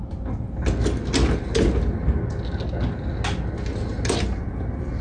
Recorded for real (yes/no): yes